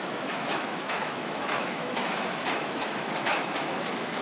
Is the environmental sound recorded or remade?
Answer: remade